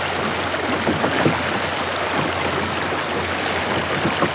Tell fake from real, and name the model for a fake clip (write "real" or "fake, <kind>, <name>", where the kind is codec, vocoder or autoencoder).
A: real